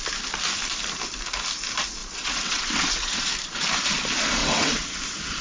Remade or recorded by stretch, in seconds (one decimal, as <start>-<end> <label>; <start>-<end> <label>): 0.0-2.0 recorded; 2.0-3.3 remade; 3.3-4.4 recorded; 4.4-5.0 remade; 5.0-5.4 recorded